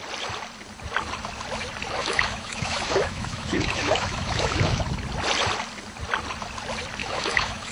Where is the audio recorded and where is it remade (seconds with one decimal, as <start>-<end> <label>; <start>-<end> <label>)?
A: 0.0-2.0 recorded; 2.0-4.8 remade; 4.8-7.0 recorded; 7.0-7.7 remade